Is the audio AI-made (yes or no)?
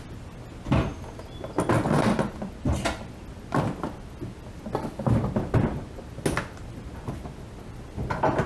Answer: no